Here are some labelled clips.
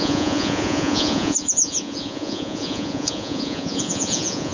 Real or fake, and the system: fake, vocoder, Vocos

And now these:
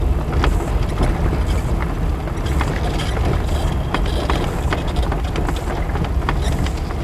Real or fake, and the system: real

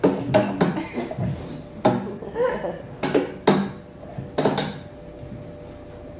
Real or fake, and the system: real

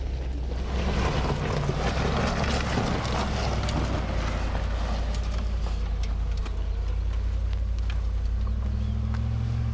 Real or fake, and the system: real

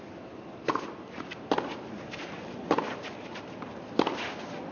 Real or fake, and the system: real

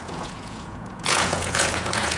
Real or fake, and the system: fake, vocoder, Vocos